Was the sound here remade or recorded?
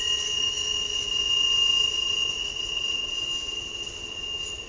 recorded